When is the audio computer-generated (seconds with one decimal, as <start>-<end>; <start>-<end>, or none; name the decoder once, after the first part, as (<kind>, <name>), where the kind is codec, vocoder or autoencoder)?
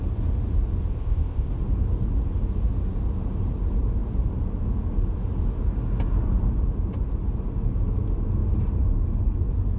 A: 0.9-1.5 (codec, ZipCodec)